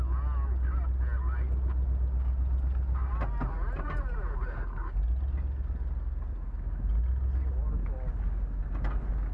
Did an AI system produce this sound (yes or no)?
no